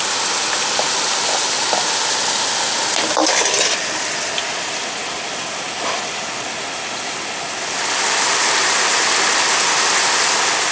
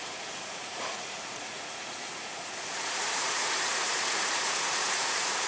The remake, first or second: second